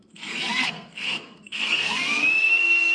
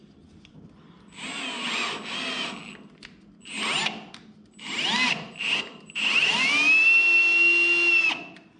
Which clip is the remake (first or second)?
first